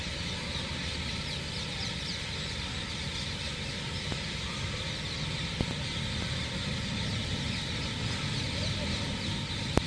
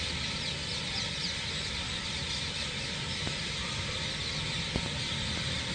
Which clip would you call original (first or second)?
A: second